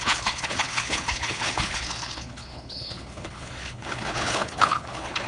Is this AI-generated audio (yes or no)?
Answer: yes